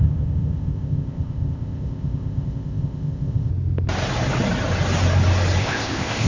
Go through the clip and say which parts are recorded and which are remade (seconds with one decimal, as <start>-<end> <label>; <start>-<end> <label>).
0.0-3.5 remade; 3.5-5.6 recorded; 5.6-6.3 remade